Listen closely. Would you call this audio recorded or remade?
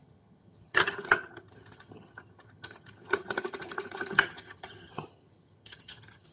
remade